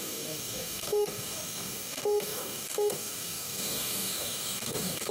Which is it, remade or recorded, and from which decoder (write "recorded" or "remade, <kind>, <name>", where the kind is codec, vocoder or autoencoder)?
remade, codec, DAC